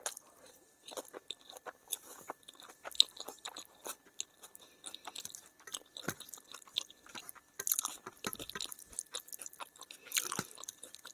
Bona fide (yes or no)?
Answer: yes